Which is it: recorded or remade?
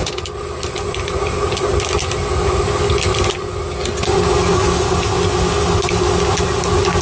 recorded